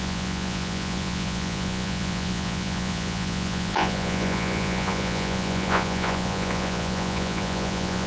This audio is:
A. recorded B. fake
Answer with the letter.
B